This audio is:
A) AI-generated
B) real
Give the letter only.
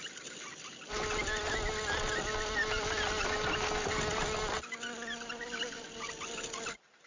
B